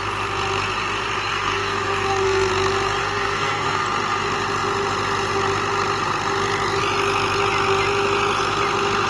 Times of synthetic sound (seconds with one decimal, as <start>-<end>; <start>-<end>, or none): 1.3-2.5; 3.0-3.8